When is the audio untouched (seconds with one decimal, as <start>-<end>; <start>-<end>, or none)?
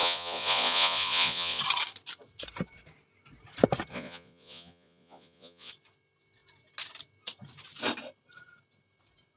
1.6-3.9; 5.7-9.4